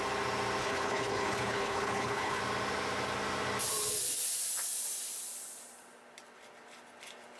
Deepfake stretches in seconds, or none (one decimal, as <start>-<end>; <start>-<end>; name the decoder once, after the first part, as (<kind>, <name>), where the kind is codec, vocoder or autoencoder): 0.6-2.4 (codec, HILCodec)